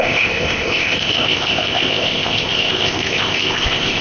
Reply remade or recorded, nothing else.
remade